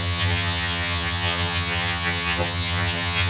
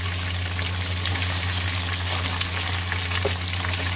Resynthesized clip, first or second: first